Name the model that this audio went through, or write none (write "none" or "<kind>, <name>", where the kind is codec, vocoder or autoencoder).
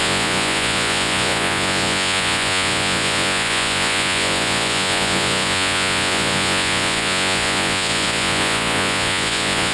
vocoder, Vocos